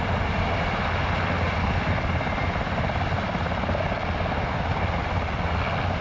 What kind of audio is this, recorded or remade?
recorded